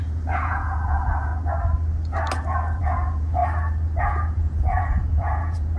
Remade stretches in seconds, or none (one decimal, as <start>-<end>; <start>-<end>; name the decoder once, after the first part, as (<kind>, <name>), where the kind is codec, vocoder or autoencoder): 0.0-1.3 (vocoder, Vocos); 2.8-3.4; 4.0-5.8